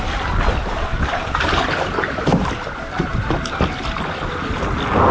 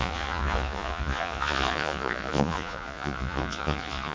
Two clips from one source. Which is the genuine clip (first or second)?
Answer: first